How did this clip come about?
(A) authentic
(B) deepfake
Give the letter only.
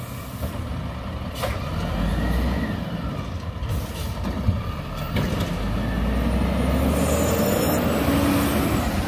A